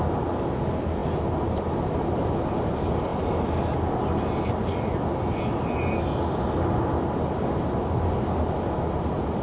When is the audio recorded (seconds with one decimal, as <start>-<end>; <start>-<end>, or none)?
0.0-9.4